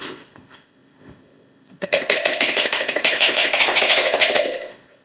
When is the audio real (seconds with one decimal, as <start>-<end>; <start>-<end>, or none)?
none